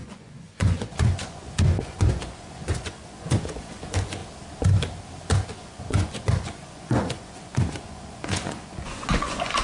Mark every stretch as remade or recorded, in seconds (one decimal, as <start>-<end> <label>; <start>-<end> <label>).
0.0-4.2 remade; 4.2-5.5 recorded; 5.5-9.6 remade